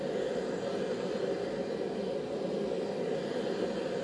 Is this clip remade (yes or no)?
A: no